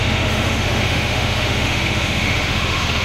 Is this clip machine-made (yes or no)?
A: yes